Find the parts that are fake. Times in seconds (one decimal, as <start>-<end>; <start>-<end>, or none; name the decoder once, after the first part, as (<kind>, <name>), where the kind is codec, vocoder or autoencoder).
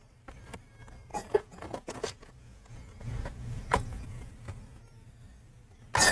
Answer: 1.1-4.3 (vocoder, Vocos)